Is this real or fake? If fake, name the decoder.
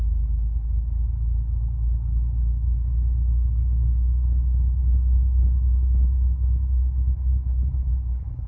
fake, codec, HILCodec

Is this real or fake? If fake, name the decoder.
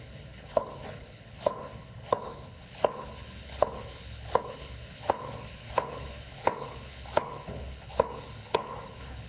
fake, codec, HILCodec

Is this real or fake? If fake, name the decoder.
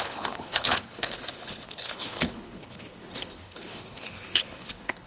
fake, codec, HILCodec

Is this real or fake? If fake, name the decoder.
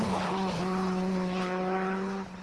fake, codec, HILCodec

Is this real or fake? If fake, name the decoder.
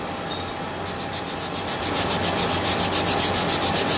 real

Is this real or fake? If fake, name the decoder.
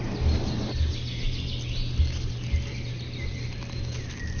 real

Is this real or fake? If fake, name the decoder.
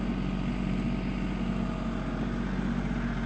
real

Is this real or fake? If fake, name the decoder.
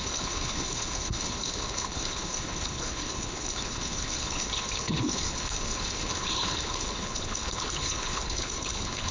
fake, codec, HILCodec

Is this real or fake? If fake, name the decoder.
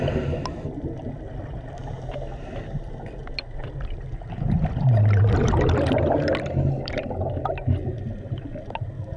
real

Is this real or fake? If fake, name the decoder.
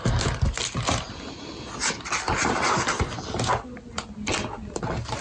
real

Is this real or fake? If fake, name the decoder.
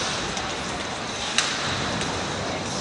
real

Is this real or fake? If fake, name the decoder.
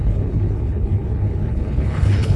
fake, codec, HILCodec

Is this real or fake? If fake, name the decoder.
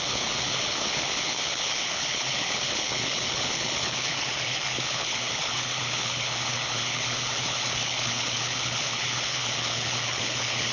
fake, codec, HILCodec